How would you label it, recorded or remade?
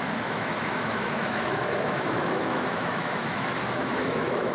remade